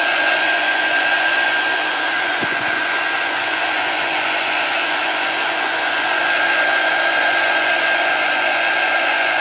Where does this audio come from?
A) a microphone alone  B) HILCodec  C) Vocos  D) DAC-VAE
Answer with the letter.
C